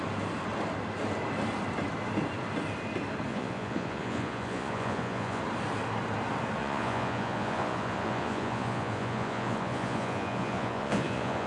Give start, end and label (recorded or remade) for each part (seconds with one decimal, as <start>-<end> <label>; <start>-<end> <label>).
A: 0.0-3.3 recorded; 3.3-5.4 remade; 5.4-6.6 recorded; 6.6-11.5 remade